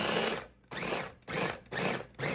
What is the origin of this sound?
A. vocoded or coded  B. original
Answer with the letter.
B